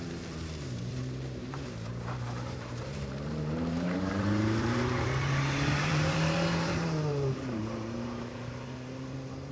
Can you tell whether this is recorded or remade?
remade